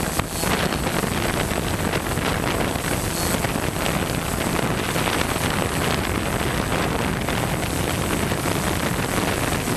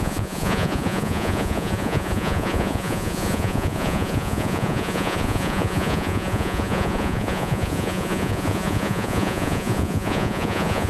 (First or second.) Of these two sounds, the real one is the first